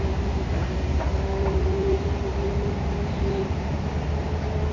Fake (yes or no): yes